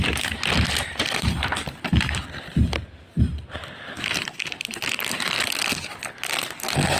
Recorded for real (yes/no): yes